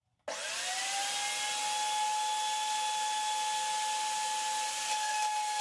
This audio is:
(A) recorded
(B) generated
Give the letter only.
A